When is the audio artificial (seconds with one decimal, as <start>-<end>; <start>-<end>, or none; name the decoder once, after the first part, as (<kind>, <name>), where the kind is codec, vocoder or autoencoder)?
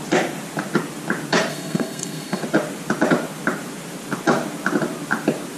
1.5-2.4 (codec, SNAC)